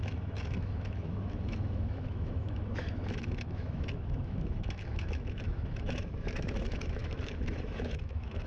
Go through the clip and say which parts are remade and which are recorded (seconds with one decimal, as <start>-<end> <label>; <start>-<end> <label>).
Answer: 0.0-8.5 remade